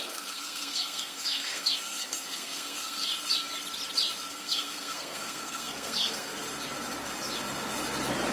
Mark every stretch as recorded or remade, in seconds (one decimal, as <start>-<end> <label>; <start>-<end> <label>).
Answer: 0.0-3.1 remade; 3.1-4.3 recorded; 4.3-6.3 remade; 6.3-8.3 recorded